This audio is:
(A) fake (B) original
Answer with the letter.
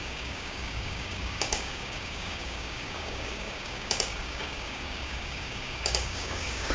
A